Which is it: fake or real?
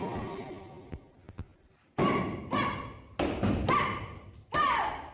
real